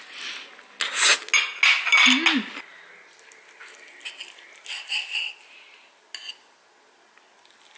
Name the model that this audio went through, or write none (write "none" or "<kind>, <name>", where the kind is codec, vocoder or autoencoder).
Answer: none